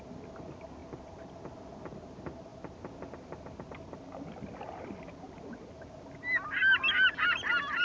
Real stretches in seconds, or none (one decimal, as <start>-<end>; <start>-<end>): 0.0-7.8